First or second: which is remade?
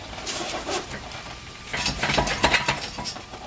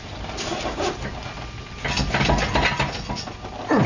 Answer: first